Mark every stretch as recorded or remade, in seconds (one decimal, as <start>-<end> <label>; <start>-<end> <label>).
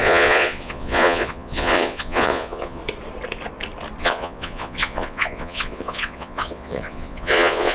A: 0.0-2.8 remade; 2.8-4.0 recorded; 4.0-7.7 remade